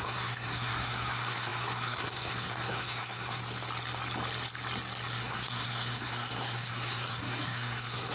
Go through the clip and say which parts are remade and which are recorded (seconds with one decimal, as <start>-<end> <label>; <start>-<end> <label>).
0.0-3.4 remade; 3.4-5.1 recorded; 5.1-8.1 remade